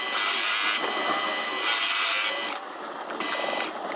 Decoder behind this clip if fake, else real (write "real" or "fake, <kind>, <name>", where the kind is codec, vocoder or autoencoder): real